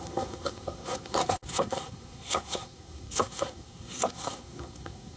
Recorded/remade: remade